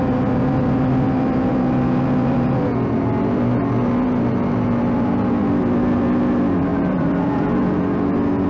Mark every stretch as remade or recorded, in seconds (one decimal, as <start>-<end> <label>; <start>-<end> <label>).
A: 0.0-8.5 recorded